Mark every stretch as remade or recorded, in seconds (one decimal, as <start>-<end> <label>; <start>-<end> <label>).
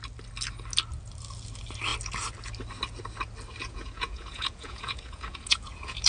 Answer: 0.0-3.6 recorded; 3.6-6.1 remade